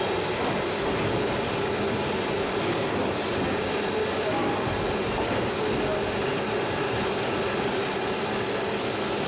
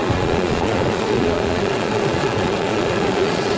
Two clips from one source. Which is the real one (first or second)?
first